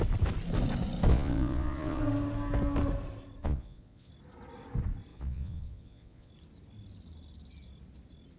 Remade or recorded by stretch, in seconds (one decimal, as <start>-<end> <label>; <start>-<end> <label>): 0.0-1.1 recorded; 1.1-2.0 remade; 2.0-3.4 recorded; 3.4-4.1 remade; 4.1-5.1 recorded; 5.1-6.3 remade; 6.3-8.4 recorded